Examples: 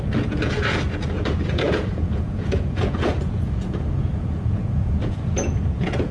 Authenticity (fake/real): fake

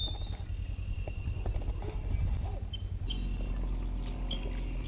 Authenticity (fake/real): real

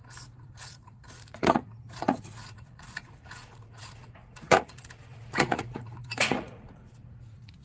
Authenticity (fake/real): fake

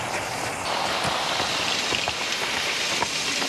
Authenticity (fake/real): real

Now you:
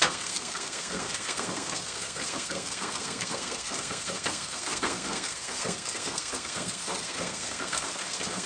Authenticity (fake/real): fake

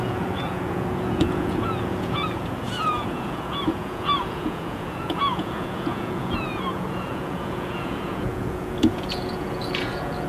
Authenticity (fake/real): fake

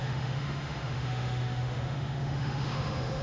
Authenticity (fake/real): fake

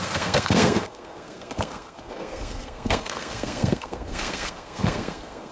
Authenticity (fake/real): fake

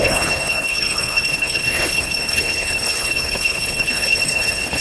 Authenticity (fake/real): fake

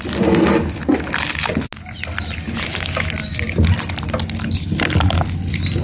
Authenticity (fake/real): real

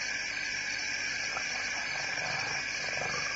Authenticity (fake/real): real